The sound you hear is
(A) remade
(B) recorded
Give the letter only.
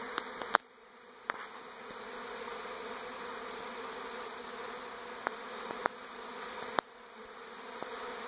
B